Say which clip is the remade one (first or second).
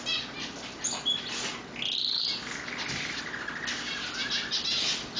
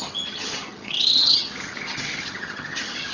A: second